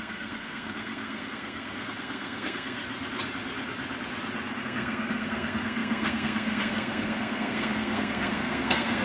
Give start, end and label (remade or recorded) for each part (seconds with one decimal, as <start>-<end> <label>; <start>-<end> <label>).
0.0-2.8 remade; 2.8-4.6 recorded; 4.6-9.0 remade